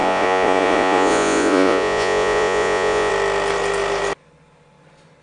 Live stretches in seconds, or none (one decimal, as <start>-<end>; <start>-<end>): 3.1-5.2

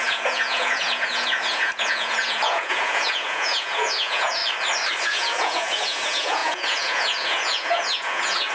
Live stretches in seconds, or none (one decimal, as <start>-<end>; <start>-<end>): 4.4-5.0

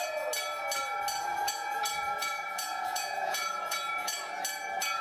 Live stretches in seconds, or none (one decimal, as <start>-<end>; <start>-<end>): 0.0-1.3; 4.3-5.0

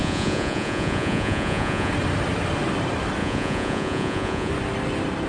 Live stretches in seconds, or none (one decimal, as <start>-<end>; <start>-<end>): 1.9-3.2; 4.5-5.3

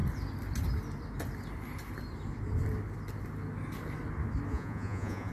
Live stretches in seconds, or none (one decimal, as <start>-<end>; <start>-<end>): 0.0-4.5

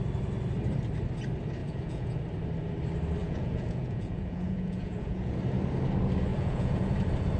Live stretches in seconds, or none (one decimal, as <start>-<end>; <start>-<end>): 0.0-1.6; 2.2-3.2; 5.3-6.3; 6.9-7.4

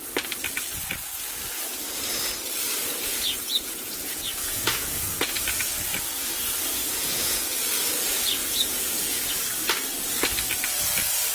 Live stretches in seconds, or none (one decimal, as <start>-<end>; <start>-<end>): 0.0-3.1; 5.4-6.8; 7.6-8.4; 9.3-11.3

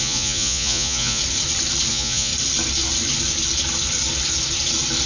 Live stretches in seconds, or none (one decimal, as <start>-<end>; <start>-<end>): 1.2-1.9; 2.3-5.1